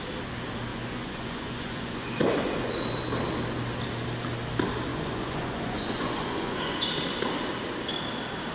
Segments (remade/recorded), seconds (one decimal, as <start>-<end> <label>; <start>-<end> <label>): 0.0-0.7 recorded; 0.7-2.7 remade; 2.7-4.9 recorded; 4.9-6.9 remade; 6.9-8.5 recorded